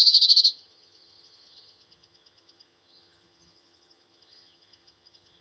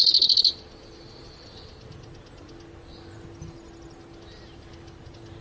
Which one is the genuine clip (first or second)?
second